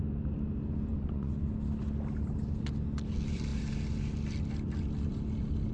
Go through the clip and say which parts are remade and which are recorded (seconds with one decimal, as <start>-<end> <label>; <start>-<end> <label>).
0.0-0.9 recorded; 0.9-1.4 remade; 1.4-5.7 recorded